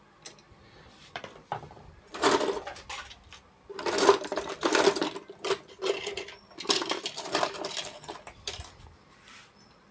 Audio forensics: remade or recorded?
remade